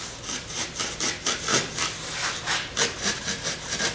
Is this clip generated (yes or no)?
no